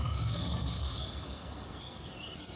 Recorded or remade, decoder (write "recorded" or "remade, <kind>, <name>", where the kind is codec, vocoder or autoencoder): remade, codec, SNAC